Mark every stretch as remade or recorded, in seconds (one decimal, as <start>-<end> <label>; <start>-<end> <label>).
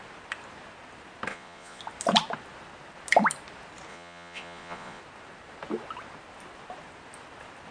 0.0-1.3 recorded; 1.3-1.8 remade; 1.8-3.9 recorded; 3.9-5.0 remade; 5.0-7.7 recorded